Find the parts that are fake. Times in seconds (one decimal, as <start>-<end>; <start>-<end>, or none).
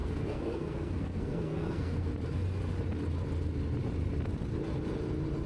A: 0.0-2.1